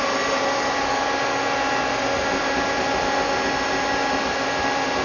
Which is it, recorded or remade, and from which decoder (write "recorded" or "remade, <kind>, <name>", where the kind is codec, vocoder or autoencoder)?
recorded